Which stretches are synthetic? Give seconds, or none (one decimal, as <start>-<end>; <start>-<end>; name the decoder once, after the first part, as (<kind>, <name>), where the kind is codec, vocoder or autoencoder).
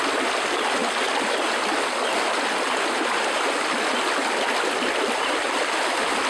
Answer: none